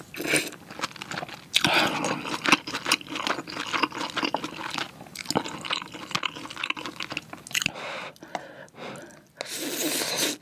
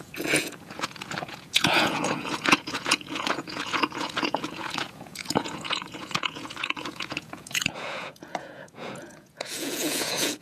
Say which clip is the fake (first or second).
second